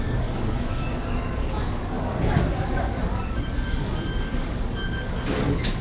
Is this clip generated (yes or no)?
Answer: yes